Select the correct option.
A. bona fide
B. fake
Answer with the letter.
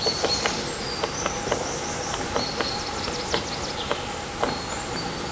A